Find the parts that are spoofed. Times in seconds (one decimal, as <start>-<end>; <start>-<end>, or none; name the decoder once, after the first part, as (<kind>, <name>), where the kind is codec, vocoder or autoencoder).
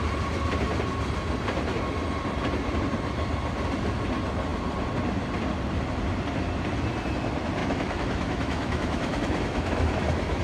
7.6-10.4 (autoencoder, DAC-VAE)